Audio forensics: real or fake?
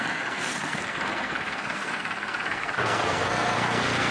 fake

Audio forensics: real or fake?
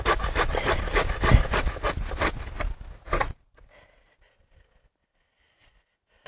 real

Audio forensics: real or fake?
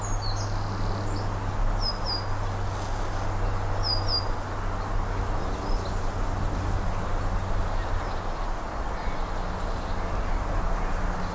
real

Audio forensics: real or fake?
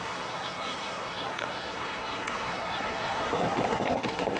fake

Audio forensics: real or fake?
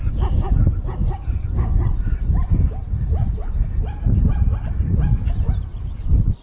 real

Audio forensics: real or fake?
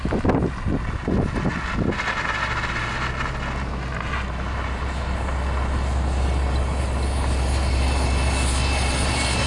real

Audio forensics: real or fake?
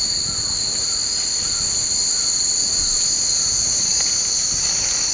real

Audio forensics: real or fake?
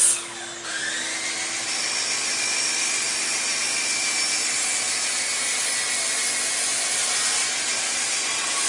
real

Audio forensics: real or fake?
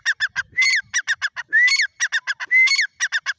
real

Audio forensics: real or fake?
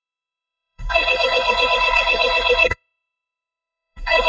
fake